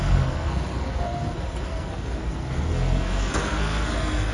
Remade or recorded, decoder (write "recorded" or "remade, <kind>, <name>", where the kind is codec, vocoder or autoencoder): remade, codec, SNAC